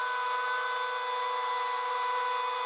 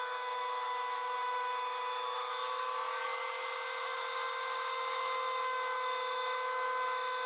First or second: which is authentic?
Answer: first